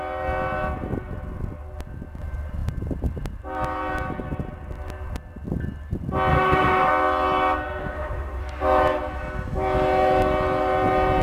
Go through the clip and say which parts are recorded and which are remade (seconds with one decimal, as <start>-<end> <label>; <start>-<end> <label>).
0.0-6.3 recorded; 6.3-6.9 remade; 6.9-7.8 recorded; 7.8-8.4 remade; 8.4-11.2 recorded